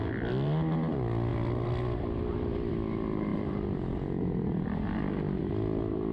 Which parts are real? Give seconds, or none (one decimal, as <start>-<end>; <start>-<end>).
0.0-6.1